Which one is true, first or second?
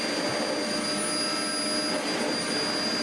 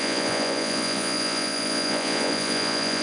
first